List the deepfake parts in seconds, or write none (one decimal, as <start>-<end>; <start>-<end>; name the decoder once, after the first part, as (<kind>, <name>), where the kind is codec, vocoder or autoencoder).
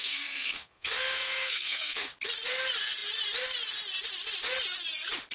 0.0-2.1 (codec, SNAC)